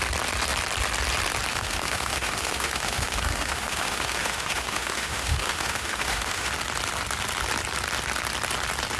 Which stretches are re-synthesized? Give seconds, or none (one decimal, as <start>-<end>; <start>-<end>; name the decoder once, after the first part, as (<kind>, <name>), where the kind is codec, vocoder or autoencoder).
1.5-6.5 (autoencoder, DAC-VAE)